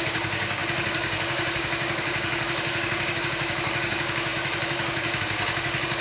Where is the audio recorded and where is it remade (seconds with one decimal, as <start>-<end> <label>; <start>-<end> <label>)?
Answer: 0.0-6.0 remade